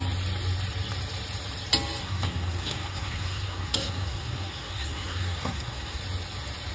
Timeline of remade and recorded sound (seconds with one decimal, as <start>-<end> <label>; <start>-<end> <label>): 0.0-2.0 recorded; 2.0-6.0 remade; 6.0-6.7 recorded